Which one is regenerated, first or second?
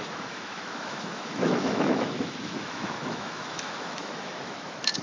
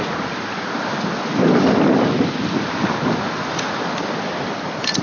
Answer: first